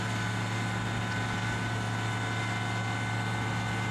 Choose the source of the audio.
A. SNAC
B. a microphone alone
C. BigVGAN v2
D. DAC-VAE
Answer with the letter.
B